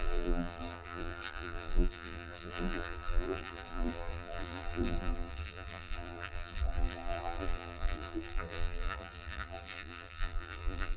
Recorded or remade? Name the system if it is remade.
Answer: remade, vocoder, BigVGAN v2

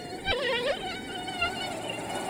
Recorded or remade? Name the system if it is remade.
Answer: recorded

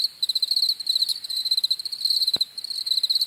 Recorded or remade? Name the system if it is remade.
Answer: recorded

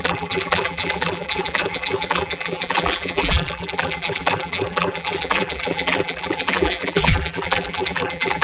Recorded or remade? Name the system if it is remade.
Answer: remade, vocoder, BigVGAN v2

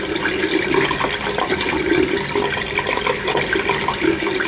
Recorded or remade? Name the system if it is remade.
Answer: recorded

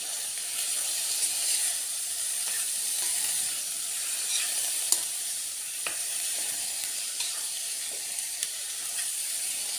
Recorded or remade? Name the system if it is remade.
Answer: remade, vocoder, BigVGAN v2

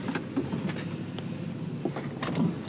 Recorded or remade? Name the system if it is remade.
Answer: recorded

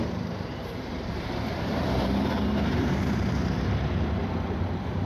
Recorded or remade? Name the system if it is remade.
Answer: remade, vocoder, BigVGAN v2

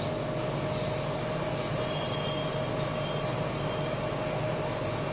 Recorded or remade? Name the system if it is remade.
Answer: recorded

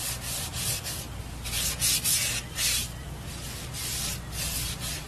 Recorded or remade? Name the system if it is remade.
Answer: remade, vocoder, BigVGAN v2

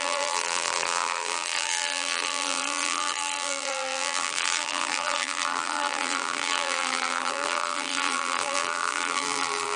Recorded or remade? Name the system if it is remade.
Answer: remade, vocoder, BigVGAN v2